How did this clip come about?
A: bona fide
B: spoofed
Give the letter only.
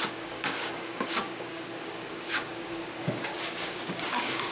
B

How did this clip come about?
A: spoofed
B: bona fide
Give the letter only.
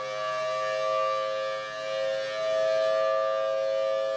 B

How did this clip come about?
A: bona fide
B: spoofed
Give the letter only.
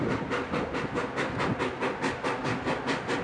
A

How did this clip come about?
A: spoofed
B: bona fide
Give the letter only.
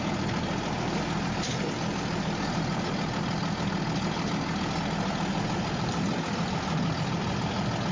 B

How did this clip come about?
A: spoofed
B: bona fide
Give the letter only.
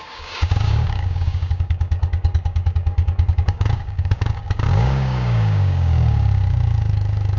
A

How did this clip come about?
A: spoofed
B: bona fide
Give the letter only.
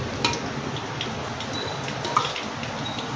B